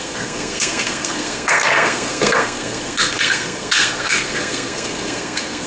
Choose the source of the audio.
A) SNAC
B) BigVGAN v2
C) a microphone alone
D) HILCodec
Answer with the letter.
A